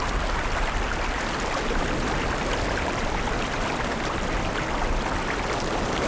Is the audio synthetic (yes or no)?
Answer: no